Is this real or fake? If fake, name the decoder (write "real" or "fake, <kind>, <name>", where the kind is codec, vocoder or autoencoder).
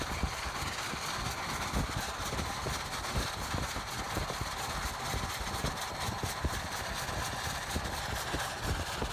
real